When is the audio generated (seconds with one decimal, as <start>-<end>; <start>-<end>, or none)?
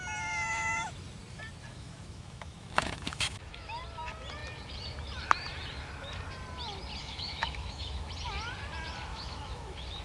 1.7-3.8; 7.0-8.1; 9.1-10.0